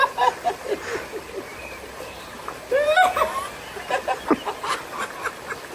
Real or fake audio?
real